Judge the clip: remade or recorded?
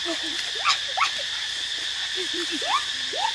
remade